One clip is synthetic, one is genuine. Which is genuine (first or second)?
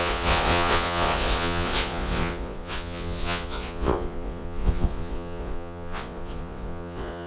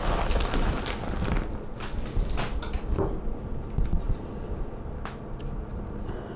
second